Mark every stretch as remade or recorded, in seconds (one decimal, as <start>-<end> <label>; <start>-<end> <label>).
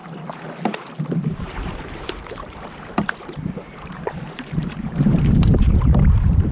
0.0-1.4 recorded; 1.4-6.5 remade